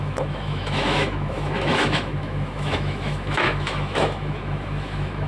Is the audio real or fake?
fake